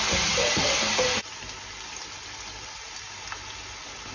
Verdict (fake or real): real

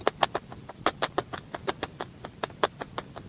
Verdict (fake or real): real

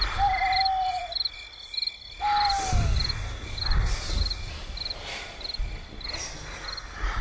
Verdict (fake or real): real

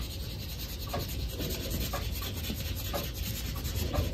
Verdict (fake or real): real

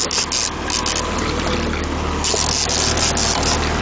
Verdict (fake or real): real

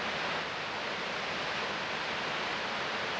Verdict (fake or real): real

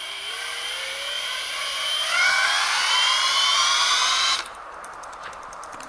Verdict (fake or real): fake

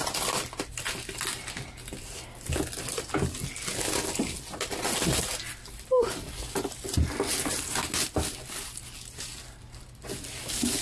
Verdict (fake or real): real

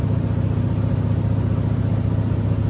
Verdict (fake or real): real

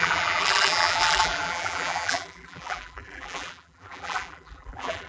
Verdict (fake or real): fake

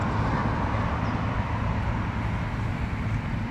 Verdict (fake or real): real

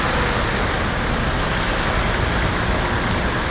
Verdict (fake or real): real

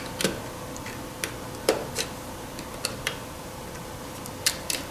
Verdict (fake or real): fake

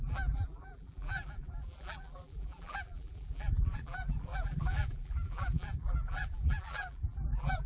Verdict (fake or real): fake